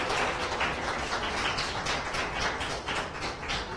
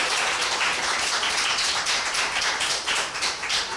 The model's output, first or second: second